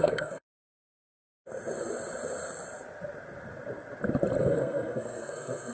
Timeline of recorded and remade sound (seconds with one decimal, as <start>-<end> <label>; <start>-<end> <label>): 0.0-1.0 remade; 1.0-4.4 recorded; 4.4-5.7 remade